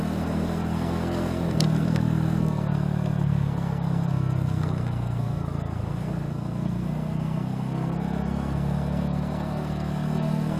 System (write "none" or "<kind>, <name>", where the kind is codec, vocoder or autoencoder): codec, SNAC